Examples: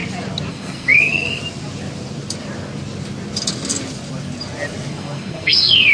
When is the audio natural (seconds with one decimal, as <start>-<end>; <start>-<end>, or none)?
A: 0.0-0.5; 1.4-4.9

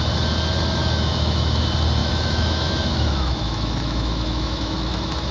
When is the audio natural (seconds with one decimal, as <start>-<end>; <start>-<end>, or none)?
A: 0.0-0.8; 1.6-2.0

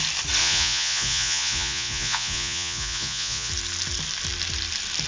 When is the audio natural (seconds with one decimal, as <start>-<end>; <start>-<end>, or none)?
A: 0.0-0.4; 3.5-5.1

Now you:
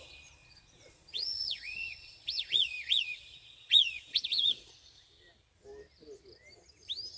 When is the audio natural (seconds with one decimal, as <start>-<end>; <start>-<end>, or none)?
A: 0.0-0.4; 4.6-7.2

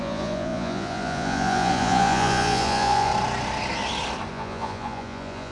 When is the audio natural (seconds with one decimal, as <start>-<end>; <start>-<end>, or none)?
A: 3.1-4.3